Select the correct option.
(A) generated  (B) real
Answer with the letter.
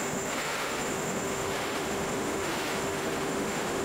A